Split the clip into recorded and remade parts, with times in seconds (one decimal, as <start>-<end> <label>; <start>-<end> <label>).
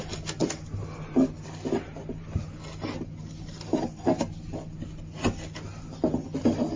0.0-6.8 recorded